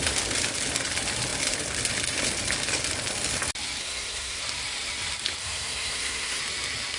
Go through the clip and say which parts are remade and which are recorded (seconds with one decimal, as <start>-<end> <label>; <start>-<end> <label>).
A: 0.0-3.8 recorded; 3.8-4.4 remade; 4.4-5.4 recorded; 5.4-6.4 remade; 6.4-7.0 recorded